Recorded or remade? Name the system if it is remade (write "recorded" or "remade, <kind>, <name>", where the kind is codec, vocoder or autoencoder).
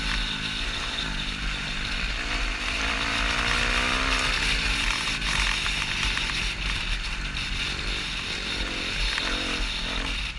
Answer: recorded